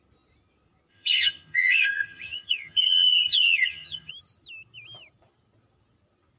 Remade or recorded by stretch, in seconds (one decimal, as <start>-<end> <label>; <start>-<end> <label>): 0.0-0.9 recorded; 0.9-4.1 remade; 4.1-6.4 recorded